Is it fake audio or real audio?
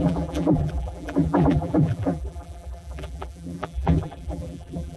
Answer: fake